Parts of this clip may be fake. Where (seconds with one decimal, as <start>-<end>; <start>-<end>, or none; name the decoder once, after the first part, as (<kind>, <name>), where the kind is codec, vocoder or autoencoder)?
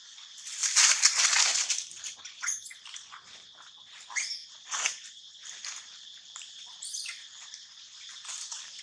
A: 0.6-1.2 (vocoder, BigVGAN v2); 4.4-8.8